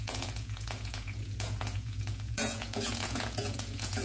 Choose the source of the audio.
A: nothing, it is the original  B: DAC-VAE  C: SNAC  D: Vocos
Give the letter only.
D